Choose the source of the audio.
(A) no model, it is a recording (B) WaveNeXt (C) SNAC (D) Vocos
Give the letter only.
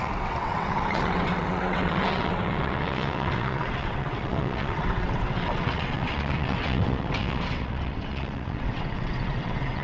B